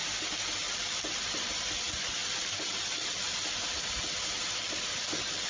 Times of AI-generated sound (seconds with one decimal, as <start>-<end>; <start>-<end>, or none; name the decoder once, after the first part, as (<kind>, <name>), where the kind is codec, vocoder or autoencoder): none